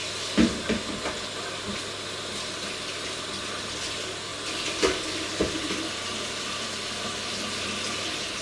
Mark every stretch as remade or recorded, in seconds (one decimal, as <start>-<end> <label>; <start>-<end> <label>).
0.0-8.4 recorded